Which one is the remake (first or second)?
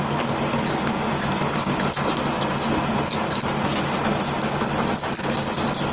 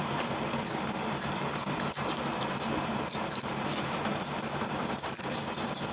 second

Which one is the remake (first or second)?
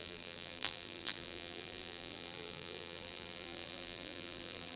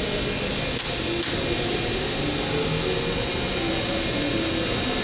first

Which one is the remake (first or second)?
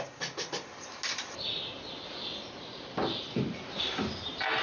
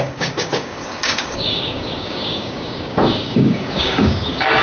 second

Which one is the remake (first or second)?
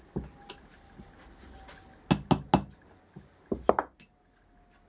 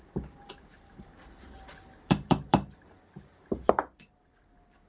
second